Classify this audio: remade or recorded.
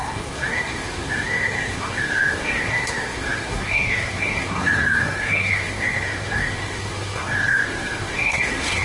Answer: remade